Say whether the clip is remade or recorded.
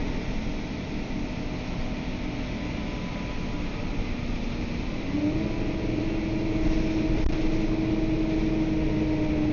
recorded